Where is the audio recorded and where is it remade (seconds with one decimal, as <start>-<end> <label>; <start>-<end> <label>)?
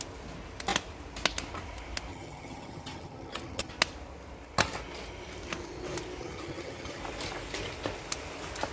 0.0-2.1 recorded; 2.1-3.7 remade; 3.7-6.2 recorded; 6.2-7.0 remade; 7.0-8.7 recorded